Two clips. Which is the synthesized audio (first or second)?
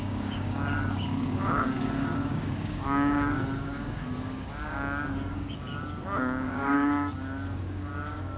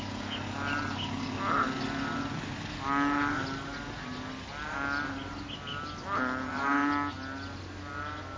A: first